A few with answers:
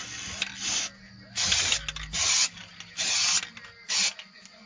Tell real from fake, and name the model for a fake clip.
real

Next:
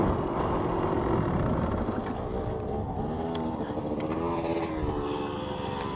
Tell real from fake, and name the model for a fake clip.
real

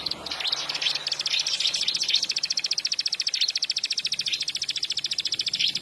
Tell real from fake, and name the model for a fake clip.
real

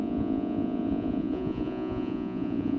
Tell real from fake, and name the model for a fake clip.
fake, vocoder, Vocos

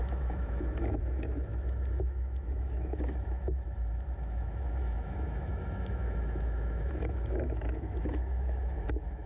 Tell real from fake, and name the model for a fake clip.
fake, autoencoder, DAC-VAE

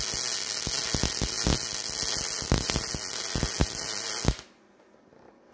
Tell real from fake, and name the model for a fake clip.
real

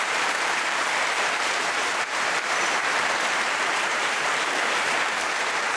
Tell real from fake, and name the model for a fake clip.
fake, vocoder, BigVGAN v2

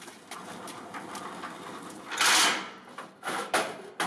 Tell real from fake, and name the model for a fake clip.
real